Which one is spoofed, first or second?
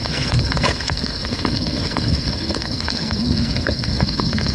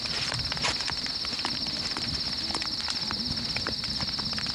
first